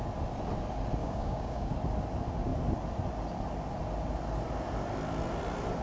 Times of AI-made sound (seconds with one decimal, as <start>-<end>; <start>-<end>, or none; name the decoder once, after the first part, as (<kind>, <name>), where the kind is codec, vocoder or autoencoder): 1.0-1.7 (codec, DAC)